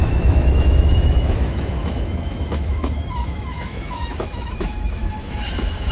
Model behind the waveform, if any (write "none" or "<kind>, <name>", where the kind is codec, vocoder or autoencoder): autoencoder, DAC-VAE